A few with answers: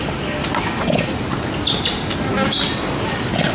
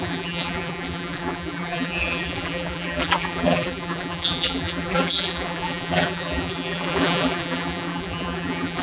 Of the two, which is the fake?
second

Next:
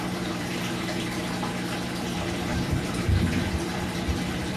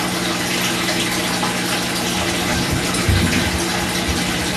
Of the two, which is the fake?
first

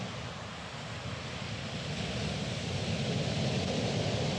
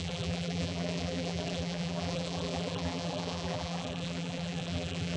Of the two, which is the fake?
second